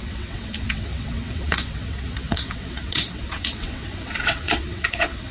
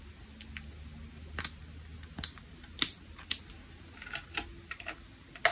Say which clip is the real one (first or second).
second